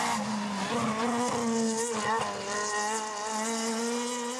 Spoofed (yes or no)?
no